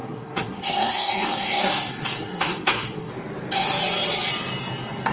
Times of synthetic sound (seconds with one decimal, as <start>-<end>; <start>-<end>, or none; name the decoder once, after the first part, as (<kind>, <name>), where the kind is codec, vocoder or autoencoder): 0.0-3.1 (codec, SNAC)